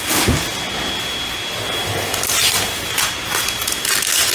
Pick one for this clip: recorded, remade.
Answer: recorded